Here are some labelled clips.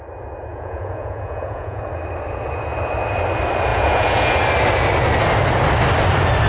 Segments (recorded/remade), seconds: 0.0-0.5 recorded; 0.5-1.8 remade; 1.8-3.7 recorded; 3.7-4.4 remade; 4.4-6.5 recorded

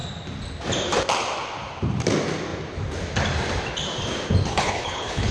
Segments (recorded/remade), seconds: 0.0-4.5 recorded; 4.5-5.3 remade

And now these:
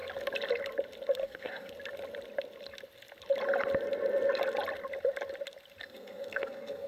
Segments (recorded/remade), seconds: 0.0-1.2 recorded; 1.2-1.7 remade; 1.7-5.8 recorded; 5.8-6.9 remade